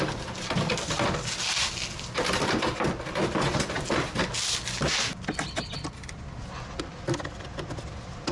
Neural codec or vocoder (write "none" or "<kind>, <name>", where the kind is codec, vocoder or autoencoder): none